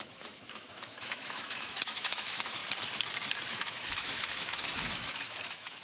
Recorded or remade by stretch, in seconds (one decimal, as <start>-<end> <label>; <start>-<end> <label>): 0.0-2.6 remade; 2.6-3.5 recorded; 3.5-5.8 remade